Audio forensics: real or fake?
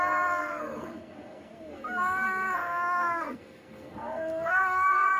fake